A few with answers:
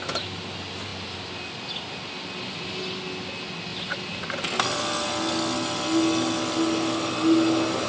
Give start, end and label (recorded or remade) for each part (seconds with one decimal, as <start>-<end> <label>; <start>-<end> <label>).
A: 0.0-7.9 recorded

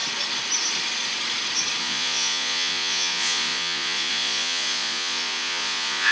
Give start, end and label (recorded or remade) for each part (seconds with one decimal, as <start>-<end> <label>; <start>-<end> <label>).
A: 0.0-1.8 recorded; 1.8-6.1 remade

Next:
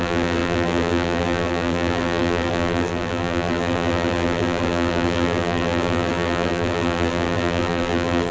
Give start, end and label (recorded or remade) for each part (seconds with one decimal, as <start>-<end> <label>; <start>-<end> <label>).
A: 0.0-8.3 remade

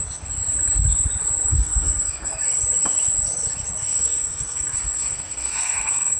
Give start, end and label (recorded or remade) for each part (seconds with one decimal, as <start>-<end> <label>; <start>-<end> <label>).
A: 0.0-1.5 recorded; 1.5-2.3 remade; 2.3-3.8 recorded; 3.8-6.2 remade

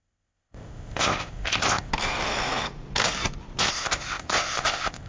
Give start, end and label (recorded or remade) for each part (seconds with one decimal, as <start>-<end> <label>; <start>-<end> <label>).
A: 0.0-1.9 remade; 1.9-3.6 recorded; 3.6-5.1 remade

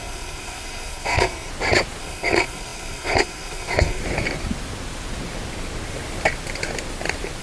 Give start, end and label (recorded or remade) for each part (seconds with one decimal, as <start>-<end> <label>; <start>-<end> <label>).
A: 0.0-1.5 remade; 1.5-2.0 recorded; 2.0-4.0 remade; 4.0-7.4 recorded